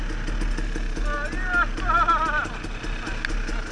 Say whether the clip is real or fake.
real